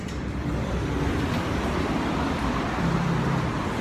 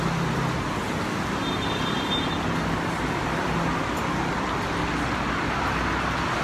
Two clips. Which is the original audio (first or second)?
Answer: second